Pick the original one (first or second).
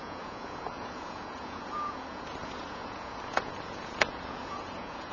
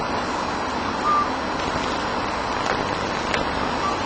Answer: second